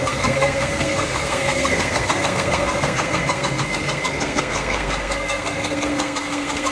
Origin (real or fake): fake